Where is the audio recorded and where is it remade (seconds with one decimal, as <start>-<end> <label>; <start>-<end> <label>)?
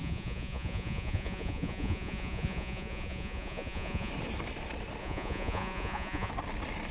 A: 0.0-4.1 remade; 4.1-5.0 recorded; 5.0-6.3 remade; 6.3-6.9 recorded